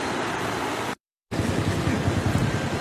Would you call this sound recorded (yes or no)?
yes